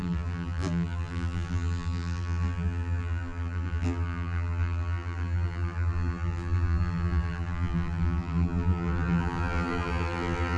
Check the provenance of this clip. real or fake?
fake